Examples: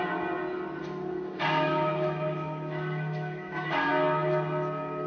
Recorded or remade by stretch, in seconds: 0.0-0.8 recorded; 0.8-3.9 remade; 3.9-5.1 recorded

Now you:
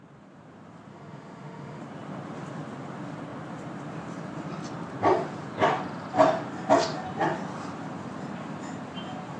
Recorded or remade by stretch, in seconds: 0.0-0.9 recorded; 0.9-1.8 remade; 1.8-9.4 recorded

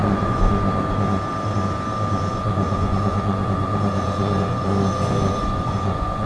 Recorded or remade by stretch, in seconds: 0.0-0.5 remade; 0.5-2.3 recorded; 2.3-6.3 remade

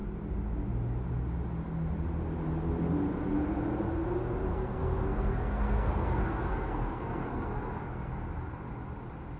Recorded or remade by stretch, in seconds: 0.0-4.5 recorded; 4.5-8.1 remade; 8.1-9.4 recorded

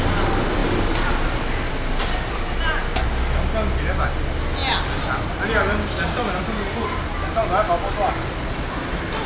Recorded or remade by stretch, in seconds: 0.0-9.3 recorded

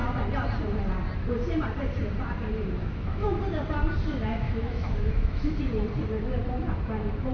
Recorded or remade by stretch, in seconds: 0.0-2.8 recorded; 2.8-3.4 remade; 3.4-4.3 recorded; 4.3-5.6 remade; 5.6-7.3 recorded